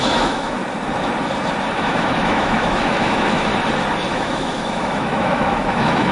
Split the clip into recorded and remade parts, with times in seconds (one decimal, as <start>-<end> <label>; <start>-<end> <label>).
0.0-0.6 remade; 0.6-1.7 recorded; 1.7-3.5 remade; 3.5-4.1 recorded; 4.1-6.1 remade

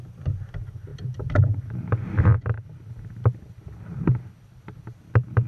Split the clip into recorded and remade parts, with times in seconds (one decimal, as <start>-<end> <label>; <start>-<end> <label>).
0.0-5.5 recorded

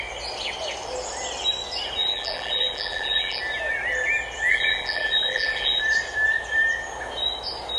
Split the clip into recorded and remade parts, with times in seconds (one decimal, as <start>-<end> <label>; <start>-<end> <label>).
0.0-2.0 recorded; 2.0-3.4 remade; 3.4-4.5 recorded; 4.5-5.8 remade; 5.8-7.8 recorded

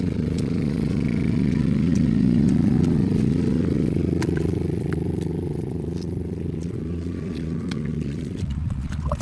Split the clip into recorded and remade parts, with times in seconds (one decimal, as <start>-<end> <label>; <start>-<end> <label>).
0.0-9.2 remade

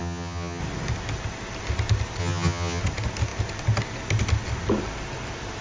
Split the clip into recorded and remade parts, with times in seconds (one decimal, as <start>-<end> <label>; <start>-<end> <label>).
0.0-0.6 remade; 0.6-2.2 recorded; 2.2-2.8 remade; 2.8-5.6 recorded

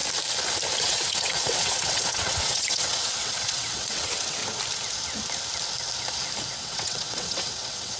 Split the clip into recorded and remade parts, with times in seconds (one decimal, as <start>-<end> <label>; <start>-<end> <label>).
0.0-0.8 recorded; 0.8-4.4 remade; 4.4-6.6 recorded; 6.6-8.0 remade